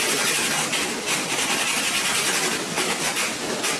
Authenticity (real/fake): real